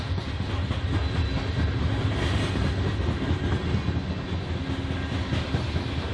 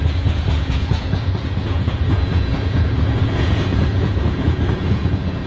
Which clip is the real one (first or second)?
first